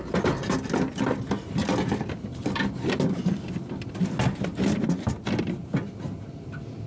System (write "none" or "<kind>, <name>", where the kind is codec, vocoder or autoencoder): none